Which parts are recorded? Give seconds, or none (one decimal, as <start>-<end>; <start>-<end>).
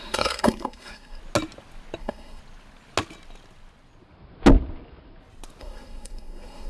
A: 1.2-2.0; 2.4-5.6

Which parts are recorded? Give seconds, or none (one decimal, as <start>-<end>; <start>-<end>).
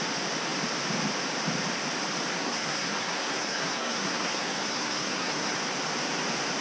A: 0.0-2.3; 5.6-6.6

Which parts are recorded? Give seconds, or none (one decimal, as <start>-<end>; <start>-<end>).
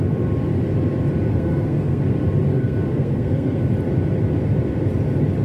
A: 0.0-1.3; 2.0-2.5; 3.6-5.4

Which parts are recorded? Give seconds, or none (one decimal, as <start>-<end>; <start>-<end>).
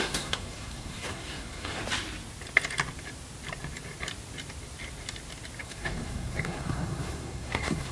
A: 1.8-5.6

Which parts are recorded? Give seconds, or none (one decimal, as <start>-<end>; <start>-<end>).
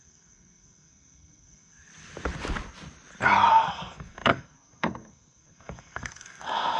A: 1.9-3.5